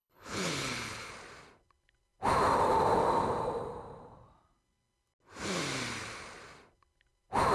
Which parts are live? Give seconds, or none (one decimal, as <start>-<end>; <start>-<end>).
1.1-7.5